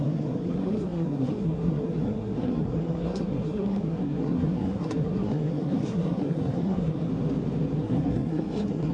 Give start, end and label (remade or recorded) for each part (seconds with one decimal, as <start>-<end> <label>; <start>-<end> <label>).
0.0-7.1 remade; 7.1-7.8 recorded; 7.8-8.9 remade